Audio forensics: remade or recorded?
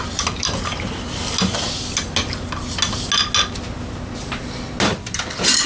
recorded